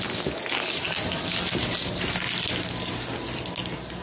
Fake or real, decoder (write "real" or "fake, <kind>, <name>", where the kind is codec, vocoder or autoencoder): real